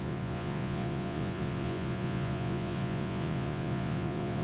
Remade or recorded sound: remade